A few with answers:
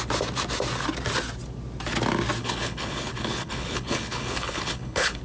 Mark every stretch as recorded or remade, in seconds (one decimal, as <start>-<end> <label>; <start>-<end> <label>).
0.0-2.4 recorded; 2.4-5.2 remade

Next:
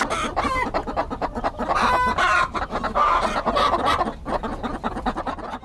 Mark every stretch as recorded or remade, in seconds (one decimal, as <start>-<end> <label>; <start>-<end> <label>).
0.0-5.6 recorded

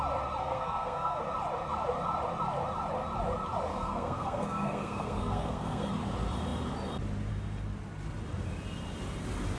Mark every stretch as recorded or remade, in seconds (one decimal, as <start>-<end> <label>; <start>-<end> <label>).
0.0-0.4 recorded; 0.4-1.2 remade; 1.2-3.7 recorded; 3.7-5.9 remade; 5.9-9.6 recorded

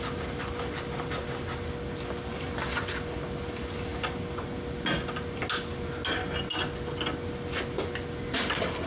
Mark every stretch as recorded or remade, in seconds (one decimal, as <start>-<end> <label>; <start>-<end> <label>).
0.0-8.9 recorded

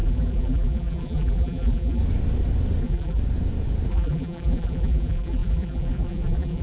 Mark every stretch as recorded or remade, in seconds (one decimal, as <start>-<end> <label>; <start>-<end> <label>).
0.0-2.0 remade; 2.0-2.8 recorded; 2.8-3.2 remade; 3.2-3.9 recorded; 3.9-6.6 remade

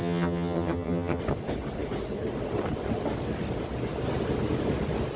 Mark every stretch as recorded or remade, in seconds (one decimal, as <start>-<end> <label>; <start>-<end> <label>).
0.0-1.2 remade; 1.2-5.2 recorded

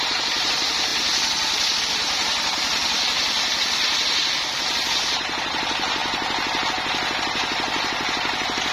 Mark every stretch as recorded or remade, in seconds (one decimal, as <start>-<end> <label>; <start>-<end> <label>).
0.0-8.7 recorded